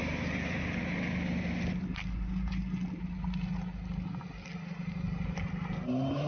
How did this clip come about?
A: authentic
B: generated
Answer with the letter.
A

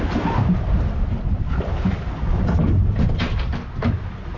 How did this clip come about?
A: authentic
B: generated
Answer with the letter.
A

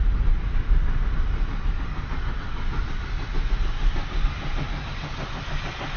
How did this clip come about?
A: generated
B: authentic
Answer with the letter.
B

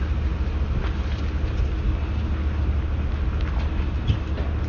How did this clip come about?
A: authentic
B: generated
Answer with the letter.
A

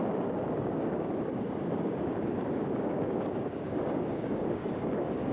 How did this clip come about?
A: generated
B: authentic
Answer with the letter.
A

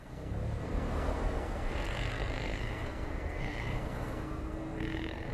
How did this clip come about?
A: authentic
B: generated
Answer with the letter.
B